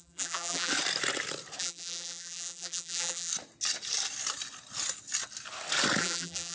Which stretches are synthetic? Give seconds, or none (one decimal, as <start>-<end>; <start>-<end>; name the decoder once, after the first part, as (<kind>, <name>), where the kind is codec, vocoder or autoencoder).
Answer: 0.0-0.7 (vocoder, BigVGAN v2); 1.6-3.3; 6.0-6.5